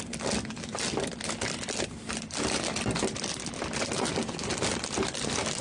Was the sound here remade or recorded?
recorded